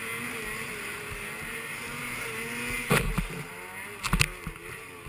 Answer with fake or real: real